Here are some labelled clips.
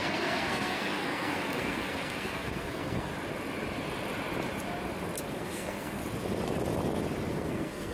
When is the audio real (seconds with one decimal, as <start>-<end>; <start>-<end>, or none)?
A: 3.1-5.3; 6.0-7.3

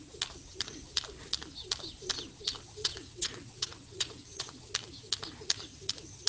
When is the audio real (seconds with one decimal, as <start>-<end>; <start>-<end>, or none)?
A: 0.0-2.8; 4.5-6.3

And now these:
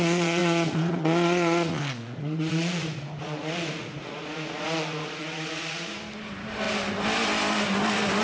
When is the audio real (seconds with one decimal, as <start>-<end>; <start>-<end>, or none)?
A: 6.0-8.2

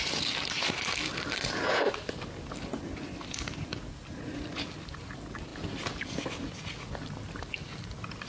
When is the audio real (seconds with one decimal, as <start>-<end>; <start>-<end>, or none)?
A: 0.0-8.3

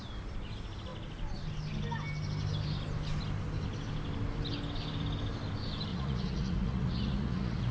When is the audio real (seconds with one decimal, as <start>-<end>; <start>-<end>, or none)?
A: 0.0-5.9

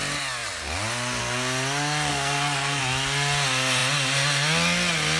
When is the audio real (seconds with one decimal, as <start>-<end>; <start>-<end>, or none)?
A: 0.0-2.1; 2.8-5.2

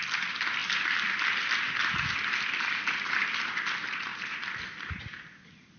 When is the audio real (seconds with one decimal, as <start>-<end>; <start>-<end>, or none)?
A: 0.0-5.8

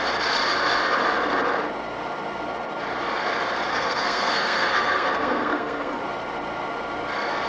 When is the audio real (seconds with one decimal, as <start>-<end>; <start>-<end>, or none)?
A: 0.0-3.7; 6.0-7.5